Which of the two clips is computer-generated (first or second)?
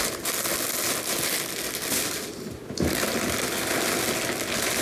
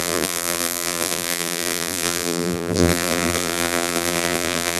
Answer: second